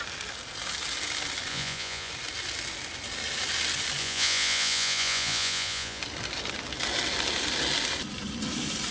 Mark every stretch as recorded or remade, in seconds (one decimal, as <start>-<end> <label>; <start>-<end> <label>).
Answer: 0.0-1.5 recorded; 1.5-2.1 remade; 2.1-4.0 recorded; 4.0-6.0 remade; 6.0-8.9 recorded